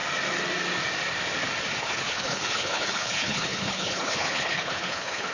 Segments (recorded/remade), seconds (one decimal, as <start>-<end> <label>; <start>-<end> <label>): 0.0-1.8 recorded; 1.8-5.3 remade